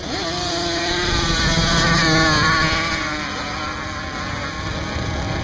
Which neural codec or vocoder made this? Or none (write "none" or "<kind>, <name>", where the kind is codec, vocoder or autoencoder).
none